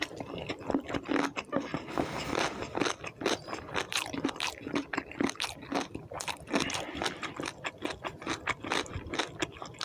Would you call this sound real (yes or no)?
no